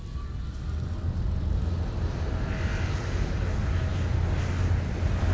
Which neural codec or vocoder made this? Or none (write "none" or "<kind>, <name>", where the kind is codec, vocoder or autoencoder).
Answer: none